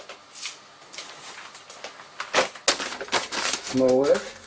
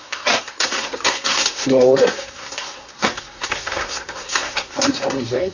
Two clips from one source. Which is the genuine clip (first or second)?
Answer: first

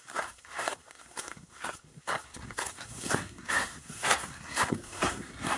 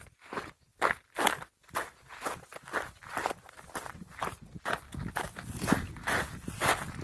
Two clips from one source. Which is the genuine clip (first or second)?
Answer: second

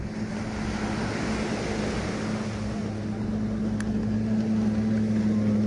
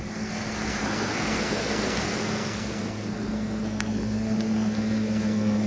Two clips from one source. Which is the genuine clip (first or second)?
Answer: first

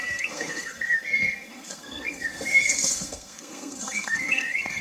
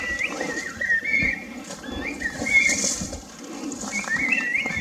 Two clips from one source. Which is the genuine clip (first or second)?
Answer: second